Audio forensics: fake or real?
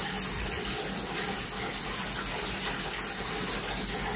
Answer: real